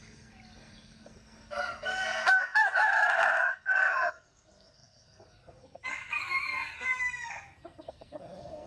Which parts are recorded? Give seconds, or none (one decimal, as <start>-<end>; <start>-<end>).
none